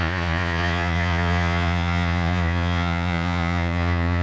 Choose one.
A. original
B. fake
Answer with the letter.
B